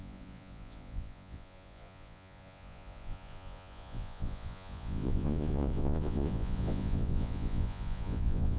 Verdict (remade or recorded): remade